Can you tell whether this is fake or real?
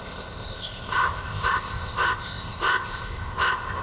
fake